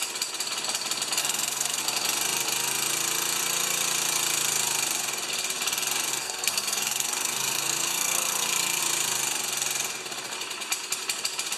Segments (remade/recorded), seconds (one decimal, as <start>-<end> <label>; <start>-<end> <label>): 0.0-1.2 recorded; 1.2-1.8 remade; 1.8-6.1 recorded; 6.1-8.8 remade; 8.8-11.6 recorded

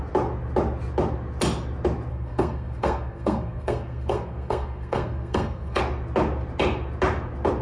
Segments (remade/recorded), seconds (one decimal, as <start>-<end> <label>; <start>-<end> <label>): 0.0-2.1 recorded; 2.1-5.8 remade; 5.8-7.6 recorded

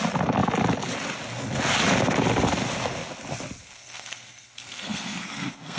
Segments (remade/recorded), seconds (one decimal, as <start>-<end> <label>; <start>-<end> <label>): 0.0-3.6 recorded; 3.6-5.8 remade

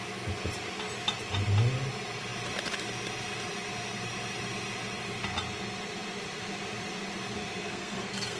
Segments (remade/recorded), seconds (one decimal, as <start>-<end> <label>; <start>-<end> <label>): 0.0-7.6 recorded; 7.6-8.4 remade

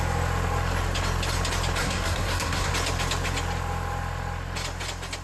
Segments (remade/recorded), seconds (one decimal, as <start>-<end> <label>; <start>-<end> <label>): 0.0-1.8 recorded; 1.8-2.7 remade; 2.7-5.2 recorded

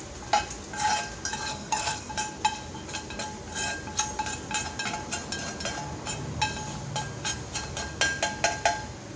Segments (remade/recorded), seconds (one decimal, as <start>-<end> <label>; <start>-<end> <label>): 0.0-1.5 recorded; 1.5-2.1 remade; 2.1-9.2 recorded